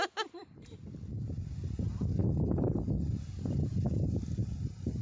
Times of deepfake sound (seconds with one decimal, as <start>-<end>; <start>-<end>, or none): none